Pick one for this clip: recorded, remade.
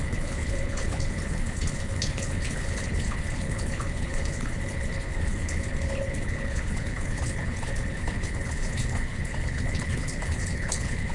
remade